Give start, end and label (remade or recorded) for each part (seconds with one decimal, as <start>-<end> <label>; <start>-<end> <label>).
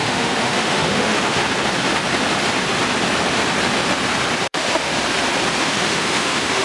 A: 0.0-1.4 remade; 1.4-4.4 recorded; 4.4-4.9 remade; 4.9-5.6 recorded; 5.6-6.6 remade